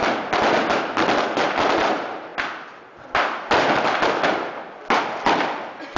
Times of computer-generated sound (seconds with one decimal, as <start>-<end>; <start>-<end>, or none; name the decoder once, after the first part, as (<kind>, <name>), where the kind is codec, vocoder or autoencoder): none